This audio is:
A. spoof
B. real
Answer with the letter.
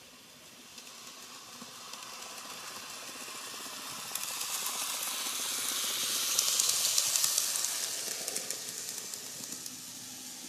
B